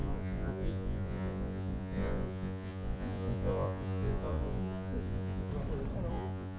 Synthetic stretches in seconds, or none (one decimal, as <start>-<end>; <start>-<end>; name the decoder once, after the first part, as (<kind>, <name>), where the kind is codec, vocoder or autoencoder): 0.0-5.5 (vocoder, Vocos); 6.1-6.6